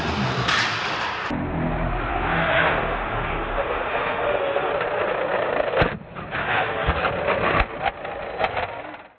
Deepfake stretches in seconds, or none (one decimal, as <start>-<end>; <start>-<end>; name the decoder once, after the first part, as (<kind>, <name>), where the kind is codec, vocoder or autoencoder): 2.1-4.7 (autoencoder, DAC-VAE); 6.4-6.9